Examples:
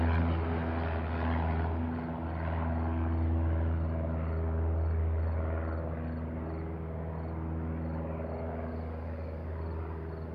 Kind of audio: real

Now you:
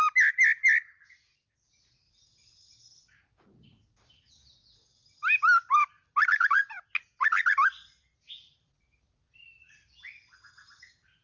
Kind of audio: real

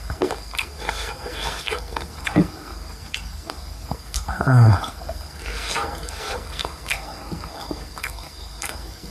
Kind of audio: fake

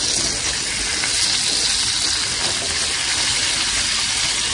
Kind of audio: real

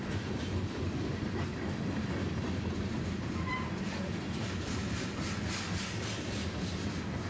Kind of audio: real